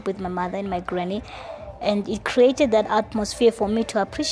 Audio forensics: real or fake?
real